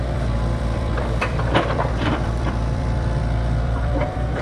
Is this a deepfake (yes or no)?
yes